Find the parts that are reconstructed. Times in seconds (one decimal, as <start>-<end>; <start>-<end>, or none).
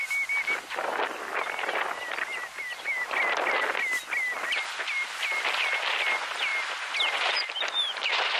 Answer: 6.5-8.4